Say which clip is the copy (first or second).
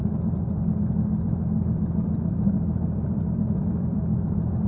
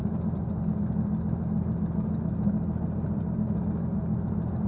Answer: first